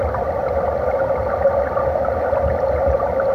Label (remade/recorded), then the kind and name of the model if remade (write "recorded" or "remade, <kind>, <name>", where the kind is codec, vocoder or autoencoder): recorded